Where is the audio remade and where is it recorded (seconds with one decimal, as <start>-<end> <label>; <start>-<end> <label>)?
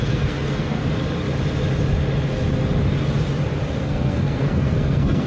0.0-0.8 remade; 0.8-3.8 recorded; 3.8-5.3 remade